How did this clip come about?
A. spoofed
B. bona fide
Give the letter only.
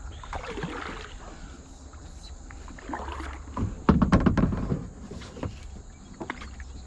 B